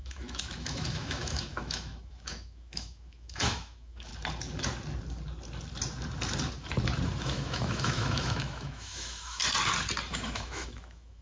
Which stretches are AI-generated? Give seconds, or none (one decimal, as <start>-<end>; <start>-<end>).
0.0-4.1; 7.2-9.4; 10.1-11.2

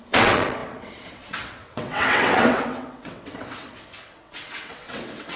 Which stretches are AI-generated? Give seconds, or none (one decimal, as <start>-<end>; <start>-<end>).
0.0-5.4

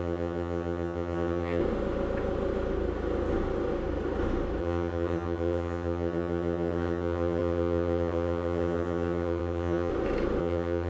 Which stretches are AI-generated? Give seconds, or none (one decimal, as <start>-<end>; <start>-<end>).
0.0-1.6; 4.6-9.9; 10.4-10.9